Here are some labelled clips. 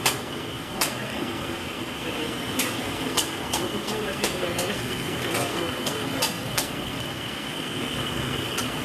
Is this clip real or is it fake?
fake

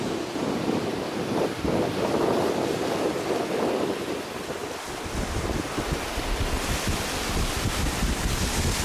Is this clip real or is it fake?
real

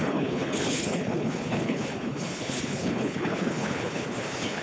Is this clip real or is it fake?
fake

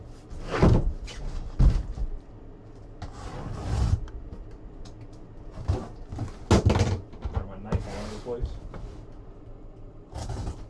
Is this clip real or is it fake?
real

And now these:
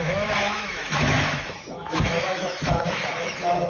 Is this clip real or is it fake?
fake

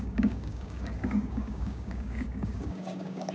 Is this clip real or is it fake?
fake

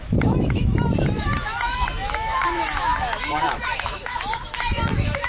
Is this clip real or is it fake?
fake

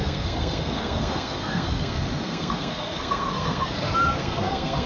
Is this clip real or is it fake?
fake